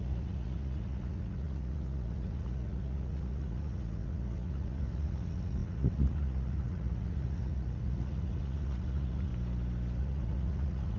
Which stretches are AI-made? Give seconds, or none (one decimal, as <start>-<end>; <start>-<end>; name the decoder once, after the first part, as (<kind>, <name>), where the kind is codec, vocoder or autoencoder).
0.0-9.3 (vocoder, Vocos); 10.0-11.0